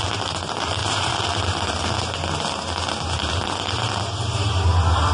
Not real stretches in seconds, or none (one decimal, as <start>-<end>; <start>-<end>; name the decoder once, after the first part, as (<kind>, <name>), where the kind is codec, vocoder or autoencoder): none